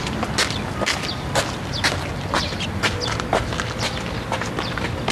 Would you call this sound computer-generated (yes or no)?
no